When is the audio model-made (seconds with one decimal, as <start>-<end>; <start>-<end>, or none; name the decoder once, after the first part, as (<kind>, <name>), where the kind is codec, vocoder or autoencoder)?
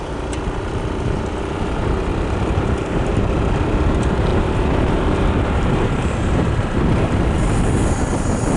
2.1-3.1 (vocoder, BigVGAN v2); 4.3-7.6